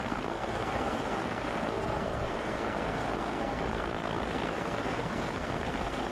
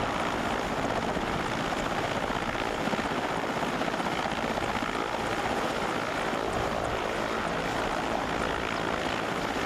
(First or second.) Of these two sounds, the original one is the second